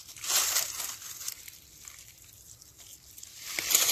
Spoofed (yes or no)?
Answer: no